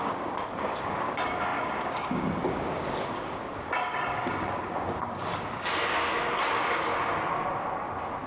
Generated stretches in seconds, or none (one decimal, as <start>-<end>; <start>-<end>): 0.0-6.9

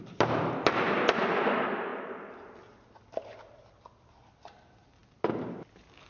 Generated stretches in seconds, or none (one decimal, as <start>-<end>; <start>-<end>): none

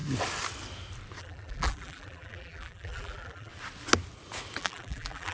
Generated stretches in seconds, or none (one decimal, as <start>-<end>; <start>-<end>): 1.2-3.5; 4.6-5.3

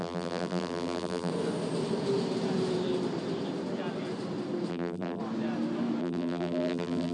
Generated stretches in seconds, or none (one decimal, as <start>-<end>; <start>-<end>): 0.0-1.3; 4.7-5.2; 6.0-7.1

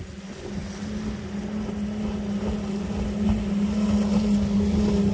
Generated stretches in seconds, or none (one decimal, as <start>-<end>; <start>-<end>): none